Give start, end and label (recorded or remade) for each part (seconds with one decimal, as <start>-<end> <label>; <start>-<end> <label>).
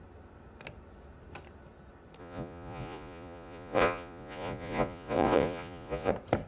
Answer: 0.0-2.2 recorded; 2.2-6.1 remade; 6.1-6.5 recorded